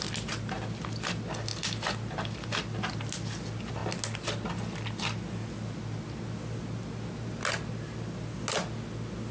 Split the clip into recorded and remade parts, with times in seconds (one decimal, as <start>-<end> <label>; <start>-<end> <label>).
0.0-9.3 recorded